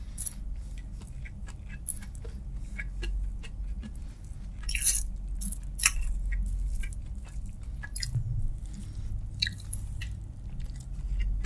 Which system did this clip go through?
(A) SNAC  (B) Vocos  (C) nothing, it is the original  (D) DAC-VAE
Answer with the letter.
C